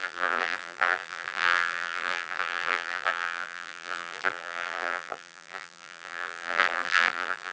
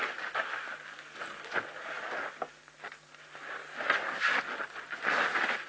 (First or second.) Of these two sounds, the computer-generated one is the first